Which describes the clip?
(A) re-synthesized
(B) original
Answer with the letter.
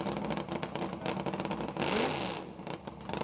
B